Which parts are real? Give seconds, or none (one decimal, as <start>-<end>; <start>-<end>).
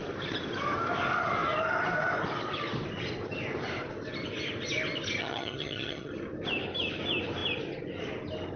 0.0-5.2; 6.1-8.6